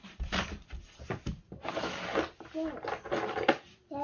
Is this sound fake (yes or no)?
no